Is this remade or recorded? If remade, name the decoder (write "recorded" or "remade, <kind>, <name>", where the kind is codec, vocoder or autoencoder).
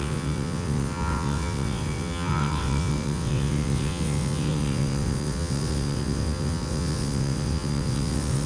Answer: remade, vocoder, WaveNeXt